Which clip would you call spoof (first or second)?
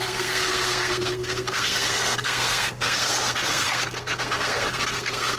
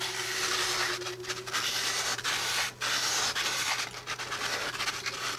first